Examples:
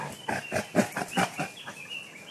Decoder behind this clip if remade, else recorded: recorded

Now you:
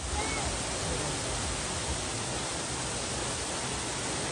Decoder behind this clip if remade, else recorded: recorded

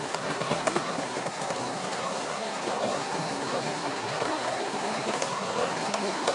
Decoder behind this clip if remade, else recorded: remade, codec, SNAC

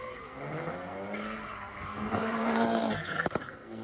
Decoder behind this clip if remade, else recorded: remade, codec, SNAC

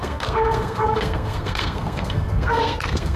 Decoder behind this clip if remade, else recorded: remade, codec, SNAC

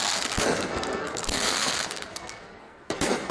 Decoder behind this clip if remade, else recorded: remade, codec, SNAC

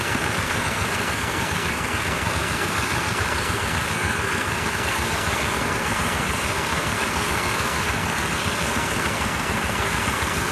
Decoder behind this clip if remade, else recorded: remade, codec, SNAC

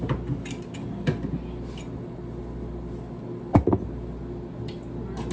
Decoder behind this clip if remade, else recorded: recorded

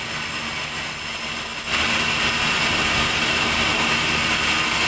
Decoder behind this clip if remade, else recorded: recorded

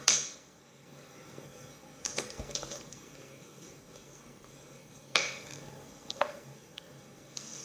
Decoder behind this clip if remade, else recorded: remade, codec, SNAC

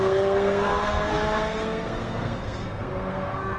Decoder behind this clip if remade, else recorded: remade, codec, SNAC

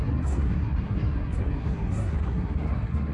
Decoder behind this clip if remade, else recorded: remade, codec, SNAC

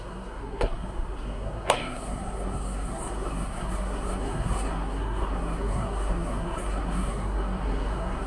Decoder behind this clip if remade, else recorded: remade, codec, SNAC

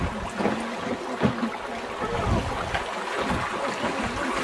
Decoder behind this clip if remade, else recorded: recorded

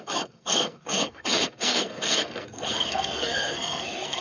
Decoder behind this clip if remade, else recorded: remade, codec, SNAC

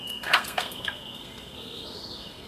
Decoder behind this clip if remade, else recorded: remade, codec, SNAC